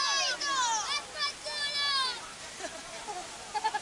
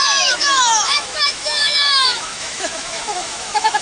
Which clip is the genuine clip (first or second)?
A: first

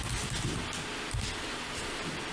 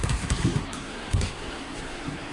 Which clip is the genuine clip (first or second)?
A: first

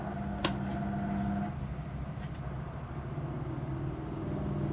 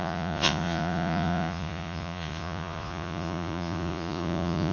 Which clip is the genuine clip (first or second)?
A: first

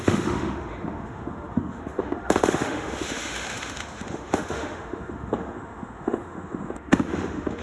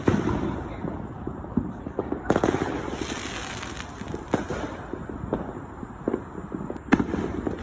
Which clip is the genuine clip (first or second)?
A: second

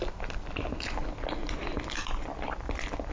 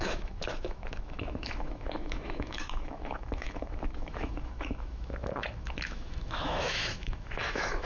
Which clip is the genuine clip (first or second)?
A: first